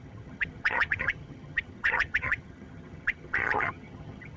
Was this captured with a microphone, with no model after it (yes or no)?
no